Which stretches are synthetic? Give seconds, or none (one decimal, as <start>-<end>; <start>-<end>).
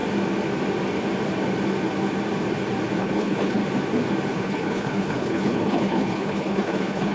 3.0-3.6; 4.3-7.1